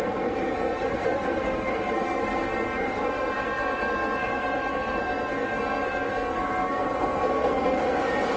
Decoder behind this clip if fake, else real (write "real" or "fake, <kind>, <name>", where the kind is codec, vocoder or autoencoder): fake, codec, SNAC